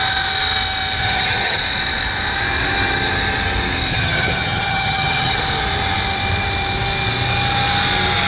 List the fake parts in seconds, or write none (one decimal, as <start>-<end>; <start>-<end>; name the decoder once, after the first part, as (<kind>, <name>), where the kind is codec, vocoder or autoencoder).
1.0-1.6 (vocoder, HiFi-GAN); 3.9-5.4